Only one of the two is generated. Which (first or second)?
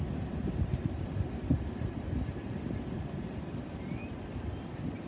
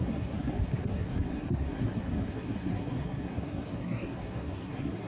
second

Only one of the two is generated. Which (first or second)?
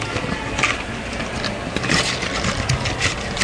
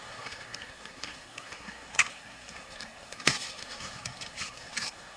second